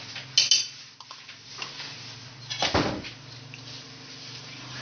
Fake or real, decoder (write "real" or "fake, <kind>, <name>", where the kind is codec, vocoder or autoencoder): real